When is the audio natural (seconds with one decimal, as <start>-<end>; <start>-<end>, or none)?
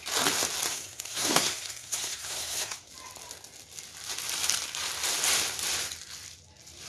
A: 0.0-0.7; 2.9-6.9